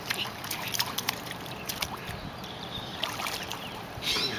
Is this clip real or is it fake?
fake